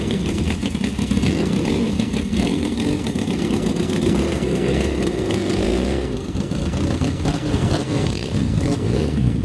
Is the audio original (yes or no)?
no